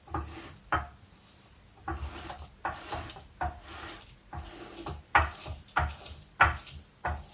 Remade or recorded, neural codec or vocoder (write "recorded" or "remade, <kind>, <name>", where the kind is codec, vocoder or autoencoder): recorded